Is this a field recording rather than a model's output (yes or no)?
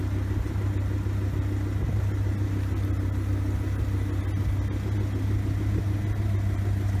yes